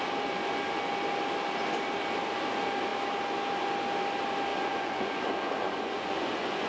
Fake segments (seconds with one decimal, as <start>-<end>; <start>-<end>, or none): 4.5-6.7